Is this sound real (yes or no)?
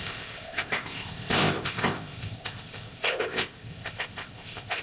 no